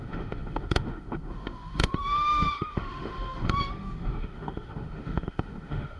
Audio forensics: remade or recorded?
remade